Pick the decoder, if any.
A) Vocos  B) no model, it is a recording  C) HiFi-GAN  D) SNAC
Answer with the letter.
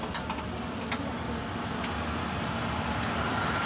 B